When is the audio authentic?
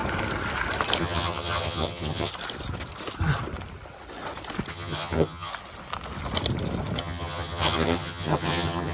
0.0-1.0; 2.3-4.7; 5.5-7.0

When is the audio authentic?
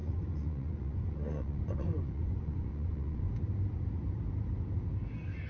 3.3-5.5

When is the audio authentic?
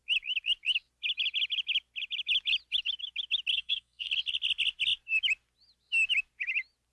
0.0-3.5; 4.1-6.9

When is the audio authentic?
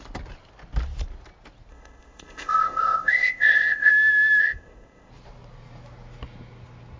0.0-1.7; 3.9-4.4; 5.1-7.0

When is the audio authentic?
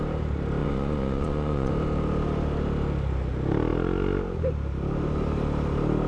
0.0-0.6; 1.7-6.1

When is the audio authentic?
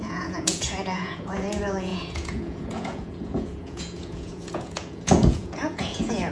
none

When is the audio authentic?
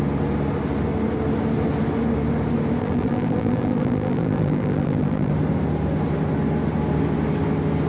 0.0-2.8; 5.3-7.9